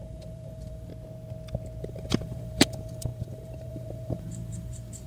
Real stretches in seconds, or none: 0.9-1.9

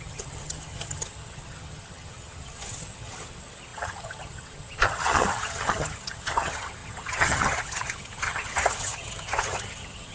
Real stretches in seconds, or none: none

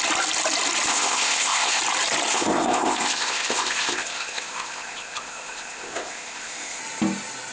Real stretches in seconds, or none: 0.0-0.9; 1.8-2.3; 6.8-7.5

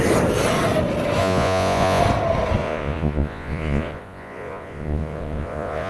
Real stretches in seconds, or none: 0.0-1.2; 2.0-2.6

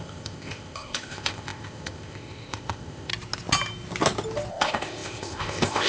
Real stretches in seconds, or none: 3.1-4.5

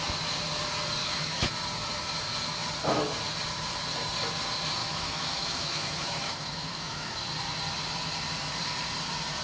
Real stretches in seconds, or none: 0.0-1.0; 1.5-4.8; 7.3-9.4

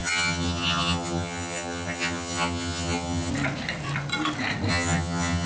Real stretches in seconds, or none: 3.3-4.7

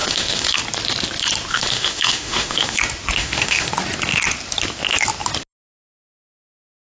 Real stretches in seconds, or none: 0.6-1.5; 2.8-3.2; 3.7-6.9